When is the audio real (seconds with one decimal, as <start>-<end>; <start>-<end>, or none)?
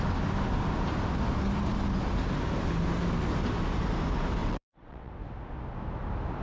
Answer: 0.0-4.4; 5.1-6.4